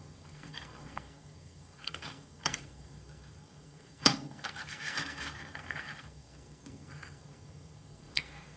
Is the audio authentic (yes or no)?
no